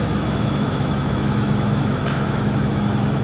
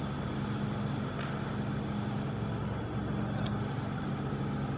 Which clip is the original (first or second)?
second